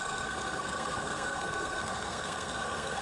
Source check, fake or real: fake